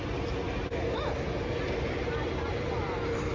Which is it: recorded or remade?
recorded